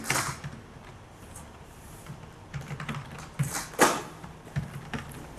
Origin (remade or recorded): recorded